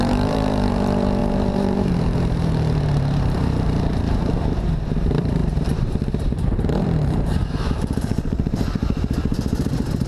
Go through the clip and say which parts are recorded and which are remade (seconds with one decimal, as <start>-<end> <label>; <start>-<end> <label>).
0.0-10.1 remade